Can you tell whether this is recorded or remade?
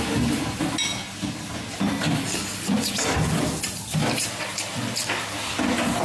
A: recorded